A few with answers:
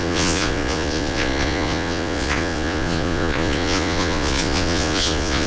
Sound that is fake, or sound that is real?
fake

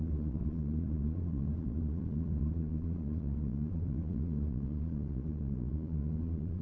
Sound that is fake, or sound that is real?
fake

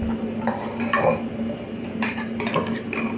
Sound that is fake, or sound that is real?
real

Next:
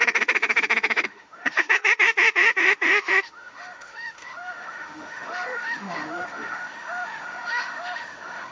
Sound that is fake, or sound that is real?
fake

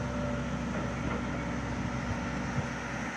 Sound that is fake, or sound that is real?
real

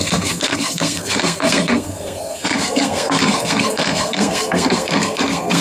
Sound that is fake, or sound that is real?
fake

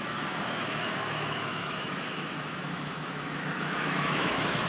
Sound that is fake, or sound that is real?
fake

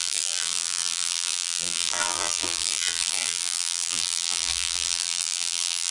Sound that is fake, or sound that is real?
fake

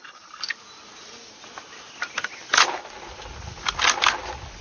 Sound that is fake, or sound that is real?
real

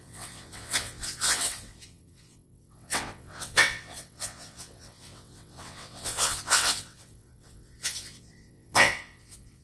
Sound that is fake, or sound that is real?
fake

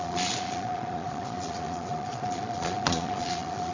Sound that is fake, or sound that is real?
fake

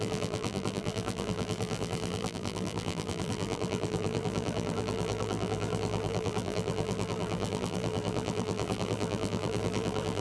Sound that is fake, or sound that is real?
fake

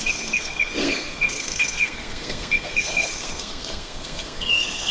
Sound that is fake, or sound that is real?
fake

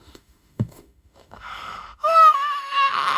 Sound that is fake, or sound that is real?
fake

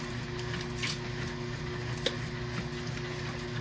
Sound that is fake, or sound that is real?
real